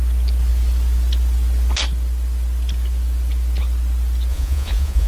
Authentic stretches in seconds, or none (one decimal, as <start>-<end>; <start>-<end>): 0.0-4.3